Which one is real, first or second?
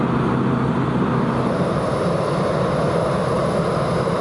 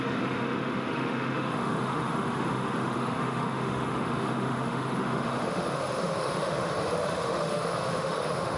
first